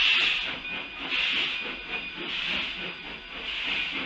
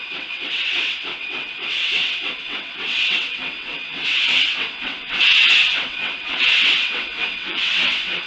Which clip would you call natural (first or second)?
first